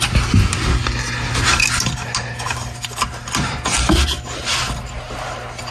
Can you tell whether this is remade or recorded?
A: recorded